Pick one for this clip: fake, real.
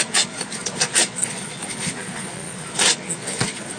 fake